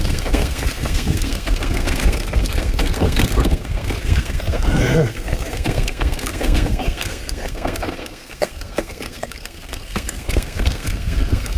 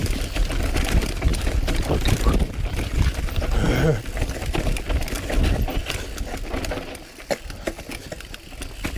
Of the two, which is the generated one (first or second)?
first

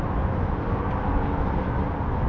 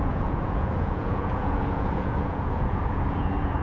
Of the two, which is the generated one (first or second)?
second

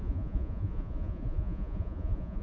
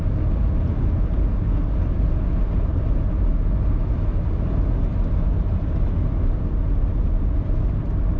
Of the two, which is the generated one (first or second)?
first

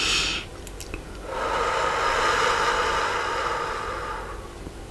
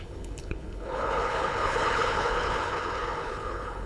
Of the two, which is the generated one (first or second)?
second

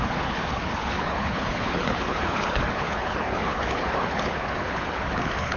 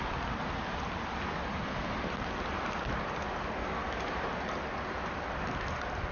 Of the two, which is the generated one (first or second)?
first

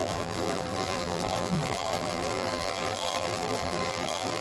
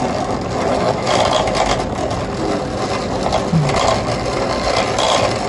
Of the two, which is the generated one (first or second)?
first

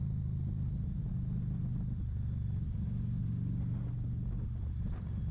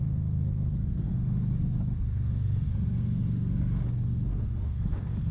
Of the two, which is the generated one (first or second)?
second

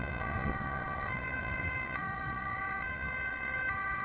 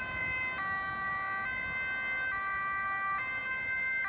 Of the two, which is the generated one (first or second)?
first